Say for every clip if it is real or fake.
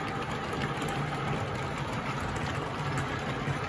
real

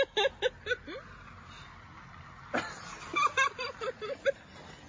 real